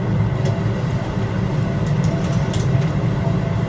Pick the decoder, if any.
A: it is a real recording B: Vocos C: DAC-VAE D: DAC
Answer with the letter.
A